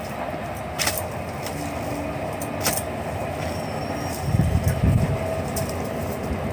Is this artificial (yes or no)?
no